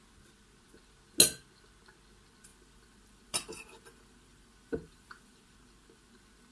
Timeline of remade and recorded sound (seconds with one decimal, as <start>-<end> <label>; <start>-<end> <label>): 0.0-2.5 recorded; 2.5-6.5 remade